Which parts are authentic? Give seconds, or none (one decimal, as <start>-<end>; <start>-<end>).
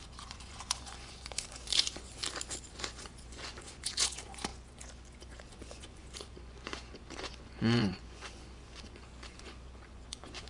2.2-2.7